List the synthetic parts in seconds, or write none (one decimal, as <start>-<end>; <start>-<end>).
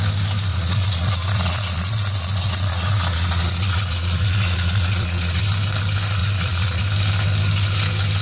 0.5-5.4; 6.2-6.8